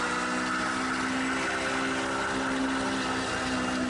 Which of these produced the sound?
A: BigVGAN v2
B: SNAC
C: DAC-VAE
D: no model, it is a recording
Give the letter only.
D